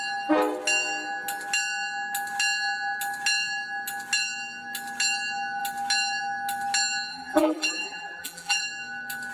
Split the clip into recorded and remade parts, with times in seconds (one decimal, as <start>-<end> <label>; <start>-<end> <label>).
0.0-7.1 recorded; 7.1-8.6 remade; 8.6-9.3 recorded